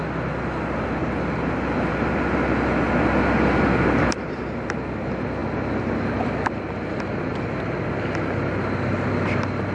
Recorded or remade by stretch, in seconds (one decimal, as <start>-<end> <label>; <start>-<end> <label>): 0.0-9.7 recorded